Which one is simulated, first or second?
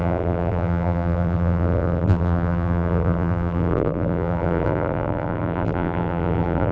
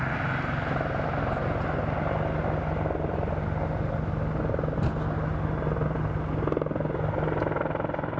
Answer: first